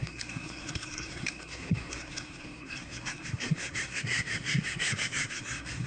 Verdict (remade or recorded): remade